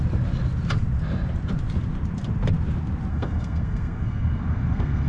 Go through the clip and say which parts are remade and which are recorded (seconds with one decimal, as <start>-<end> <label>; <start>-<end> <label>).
0.0-3.1 recorded; 3.1-5.1 remade